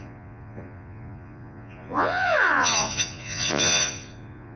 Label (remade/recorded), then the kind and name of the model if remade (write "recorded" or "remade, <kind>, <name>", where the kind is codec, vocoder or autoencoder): remade, vocoder, Vocos